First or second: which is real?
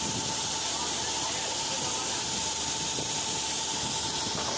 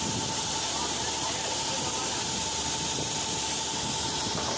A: first